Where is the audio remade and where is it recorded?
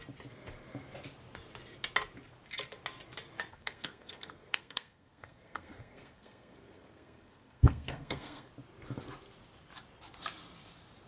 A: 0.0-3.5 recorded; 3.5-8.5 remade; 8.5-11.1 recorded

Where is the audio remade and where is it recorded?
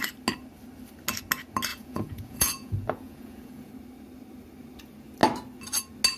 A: 0.0-1.7 recorded; 1.7-3.7 remade; 3.7-6.2 recorded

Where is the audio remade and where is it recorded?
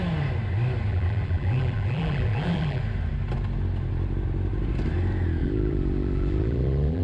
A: 0.0-0.9 recorded; 0.9-2.8 remade; 2.8-5.4 recorded; 5.4-7.0 remade